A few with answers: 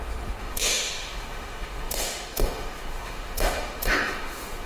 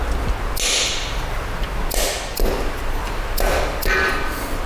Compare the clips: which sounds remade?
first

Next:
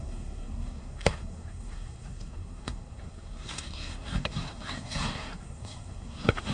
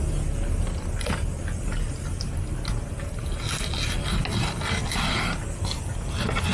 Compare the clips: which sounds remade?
first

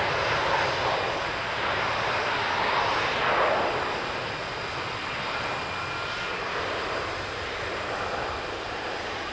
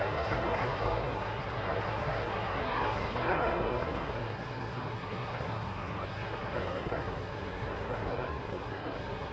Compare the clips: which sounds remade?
second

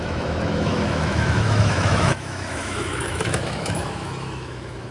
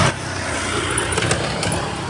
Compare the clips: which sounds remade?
first